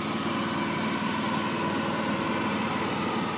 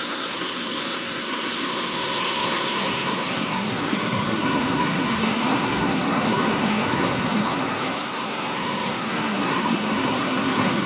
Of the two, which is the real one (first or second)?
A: first